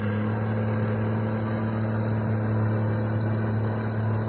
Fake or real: real